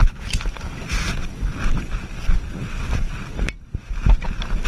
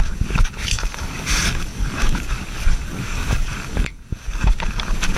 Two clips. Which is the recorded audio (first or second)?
first